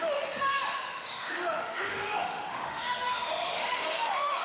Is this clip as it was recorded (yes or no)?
no